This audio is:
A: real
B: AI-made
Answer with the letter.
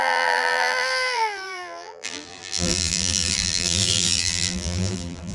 B